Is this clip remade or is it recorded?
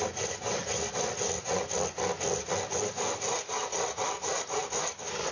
recorded